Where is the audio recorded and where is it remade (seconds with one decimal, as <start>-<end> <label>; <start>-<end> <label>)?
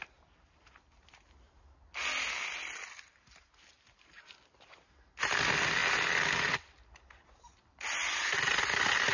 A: 0.0-9.1 recorded